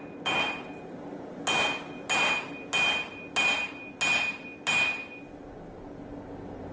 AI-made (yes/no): no